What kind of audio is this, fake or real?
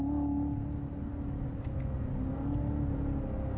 real